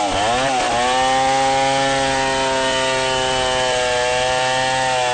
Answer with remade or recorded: recorded